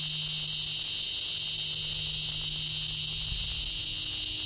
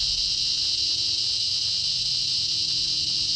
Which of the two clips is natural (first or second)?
first